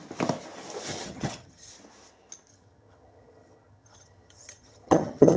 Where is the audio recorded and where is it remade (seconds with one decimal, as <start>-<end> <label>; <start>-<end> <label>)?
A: 0.0-0.9 recorded; 0.9-1.7 remade; 1.7-2.5 recorded; 2.5-5.4 remade